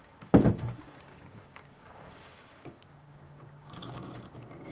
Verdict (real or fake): fake